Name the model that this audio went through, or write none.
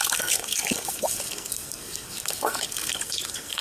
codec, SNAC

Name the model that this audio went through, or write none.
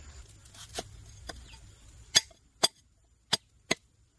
none